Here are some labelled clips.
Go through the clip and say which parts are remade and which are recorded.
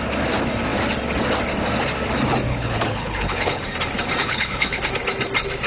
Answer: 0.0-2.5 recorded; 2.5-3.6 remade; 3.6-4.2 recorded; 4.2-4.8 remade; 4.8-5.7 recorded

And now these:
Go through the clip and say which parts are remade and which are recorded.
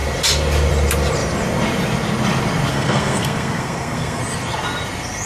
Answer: 0.0-2.7 recorded; 2.7-4.2 remade; 4.2-5.3 recorded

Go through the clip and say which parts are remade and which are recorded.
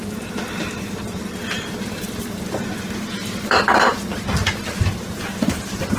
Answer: 0.0-3.9 remade; 3.9-4.6 recorded; 4.6-6.0 remade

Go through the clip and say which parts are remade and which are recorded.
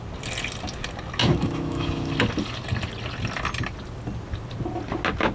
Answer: 0.0-1.2 recorded; 1.2-2.1 remade; 2.1-5.3 recorded